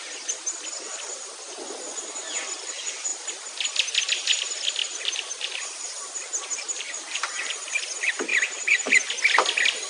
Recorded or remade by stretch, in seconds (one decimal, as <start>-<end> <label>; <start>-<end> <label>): 0.0-4.8 recorded; 4.8-7.7 remade; 7.7-8.3 recorded; 8.3-8.9 remade; 8.9-9.9 recorded